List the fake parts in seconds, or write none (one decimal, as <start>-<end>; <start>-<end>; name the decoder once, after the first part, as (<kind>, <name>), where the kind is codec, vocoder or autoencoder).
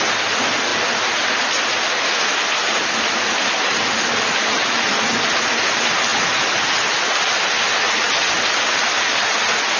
none